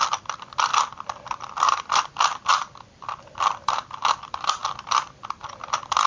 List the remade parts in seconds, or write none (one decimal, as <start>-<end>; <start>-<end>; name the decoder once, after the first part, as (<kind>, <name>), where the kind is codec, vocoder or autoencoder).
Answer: 0.0-4.6 (vocoder, BigVGAN v2); 5.5-6.1